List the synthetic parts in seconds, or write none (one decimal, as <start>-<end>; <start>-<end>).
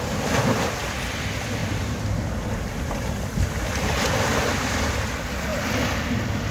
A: 4.3-4.9; 5.5-6.5